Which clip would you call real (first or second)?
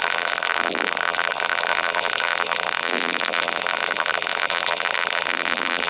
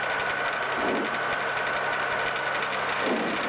second